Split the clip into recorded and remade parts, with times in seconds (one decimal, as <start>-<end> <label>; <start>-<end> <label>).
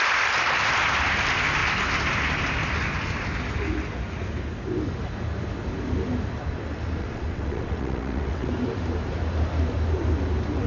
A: 0.0-7.0 recorded; 7.0-8.5 remade; 8.5-10.7 recorded